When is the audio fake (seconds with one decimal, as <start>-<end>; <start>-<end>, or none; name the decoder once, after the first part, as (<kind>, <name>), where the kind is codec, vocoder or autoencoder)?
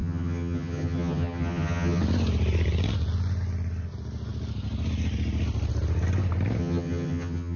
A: 0.0-2.0 (vocoder, HiFi-GAN); 6.6-7.6